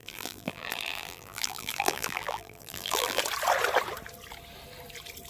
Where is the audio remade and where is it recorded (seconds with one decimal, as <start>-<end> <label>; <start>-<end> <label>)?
0.0-3.2 remade; 3.2-5.3 recorded